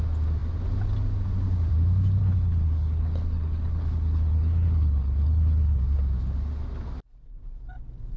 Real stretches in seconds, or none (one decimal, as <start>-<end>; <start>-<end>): 0.0-2.2; 5.8-8.2